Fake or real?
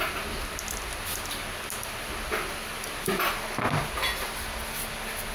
real